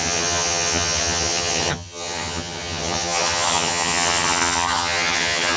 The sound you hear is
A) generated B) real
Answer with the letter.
A